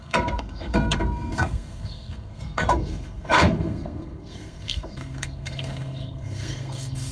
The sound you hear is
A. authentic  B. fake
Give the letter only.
B